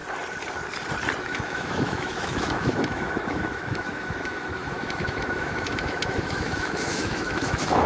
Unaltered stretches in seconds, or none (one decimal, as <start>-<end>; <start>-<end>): 0.0-1.2